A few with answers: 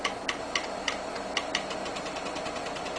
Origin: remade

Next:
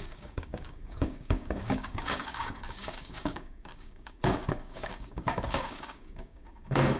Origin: remade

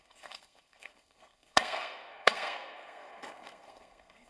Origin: remade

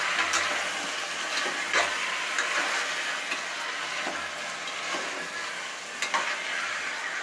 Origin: recorded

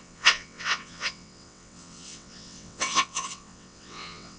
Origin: remade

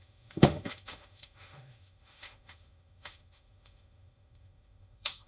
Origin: remade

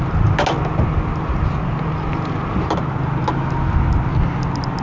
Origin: recorded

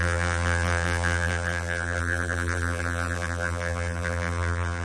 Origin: remade